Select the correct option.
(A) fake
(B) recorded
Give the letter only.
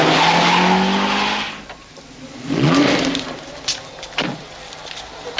B